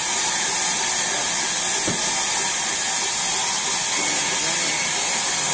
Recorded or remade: recorded